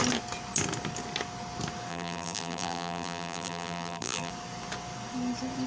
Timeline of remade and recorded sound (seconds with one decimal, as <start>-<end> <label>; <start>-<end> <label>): 0.0-1.9 recorded; 1.9-4.3 remade; 4.3-5.7 recorded